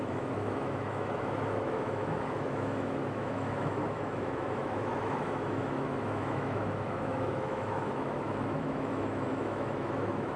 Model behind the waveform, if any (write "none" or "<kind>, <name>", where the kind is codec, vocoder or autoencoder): autoencoder, DAC-VAE